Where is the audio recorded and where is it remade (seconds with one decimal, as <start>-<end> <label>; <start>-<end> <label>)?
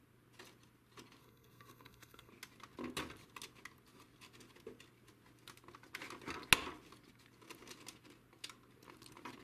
0.0-1.2 recorded; 1.2-2.3 remade; 2.3-9.4 recorded